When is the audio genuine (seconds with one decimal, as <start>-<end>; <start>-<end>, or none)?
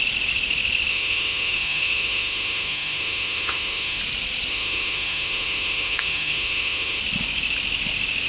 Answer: 0.0-0.9; 4.0-4.5; 7.0-8.3